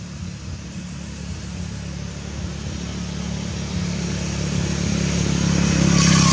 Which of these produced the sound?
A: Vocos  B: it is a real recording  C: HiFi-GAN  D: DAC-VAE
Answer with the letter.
B